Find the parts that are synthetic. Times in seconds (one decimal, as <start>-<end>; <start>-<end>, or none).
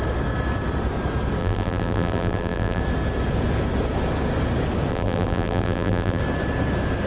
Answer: 1.4-2.8; 4.9-6.2